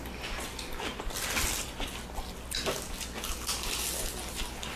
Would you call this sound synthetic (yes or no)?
no